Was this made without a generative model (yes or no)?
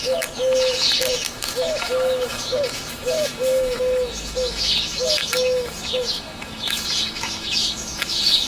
no